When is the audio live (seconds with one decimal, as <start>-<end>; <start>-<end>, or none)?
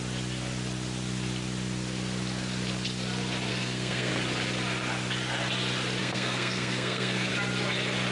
0.0-3.5; 4.1-6.0; 7.3-8.1